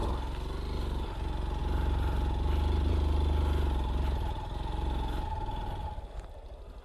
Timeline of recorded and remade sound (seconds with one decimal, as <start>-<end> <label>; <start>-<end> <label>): 0.0-6.8 recorded